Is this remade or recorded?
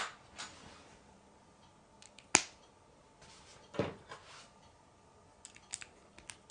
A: recorded